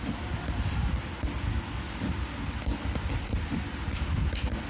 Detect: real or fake real